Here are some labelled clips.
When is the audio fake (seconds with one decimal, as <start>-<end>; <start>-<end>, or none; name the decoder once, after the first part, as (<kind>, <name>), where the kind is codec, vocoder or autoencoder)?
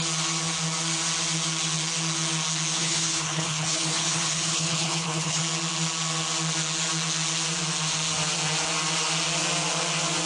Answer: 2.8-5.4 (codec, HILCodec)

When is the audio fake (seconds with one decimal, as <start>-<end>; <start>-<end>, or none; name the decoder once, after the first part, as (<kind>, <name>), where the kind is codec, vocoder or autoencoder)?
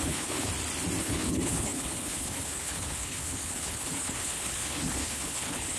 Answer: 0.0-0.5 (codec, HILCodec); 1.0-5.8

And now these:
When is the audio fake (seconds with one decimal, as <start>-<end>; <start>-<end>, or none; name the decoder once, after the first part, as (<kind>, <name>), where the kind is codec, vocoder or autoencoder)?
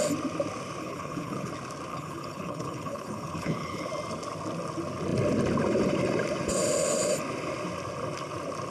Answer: 0.8-1.5 (codec, HILCodec); 1.9-3.9